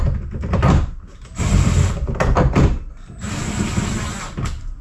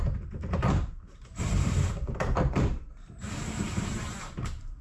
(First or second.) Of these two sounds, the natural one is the first